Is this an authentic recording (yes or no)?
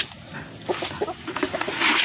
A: yes